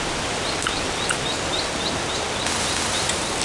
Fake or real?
real